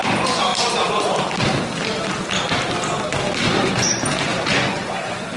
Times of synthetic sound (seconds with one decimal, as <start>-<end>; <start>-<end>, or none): 0.0-0.5; 3.7-5.4